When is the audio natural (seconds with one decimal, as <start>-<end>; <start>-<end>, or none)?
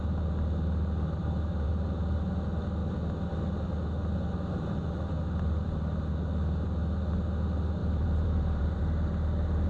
0.0-1.2; 1.7-7.8; 8.8-9.7